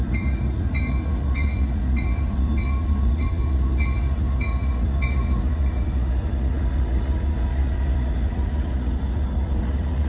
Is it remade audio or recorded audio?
remade